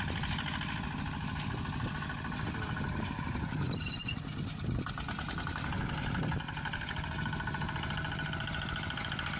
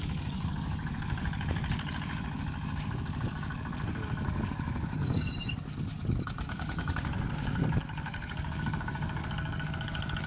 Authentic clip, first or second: first